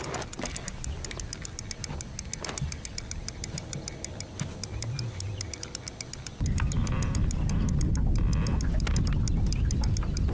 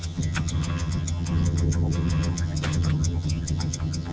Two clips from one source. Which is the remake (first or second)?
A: second